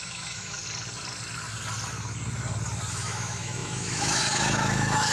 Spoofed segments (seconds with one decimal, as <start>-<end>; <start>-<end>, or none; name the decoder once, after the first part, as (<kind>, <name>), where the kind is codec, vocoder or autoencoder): 0.0-0.6 (autoencoder, DAC-VAE); 2.9-5.1